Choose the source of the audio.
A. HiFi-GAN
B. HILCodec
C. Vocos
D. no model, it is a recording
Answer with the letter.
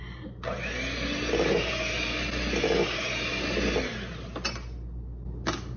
D